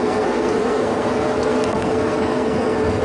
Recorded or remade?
remade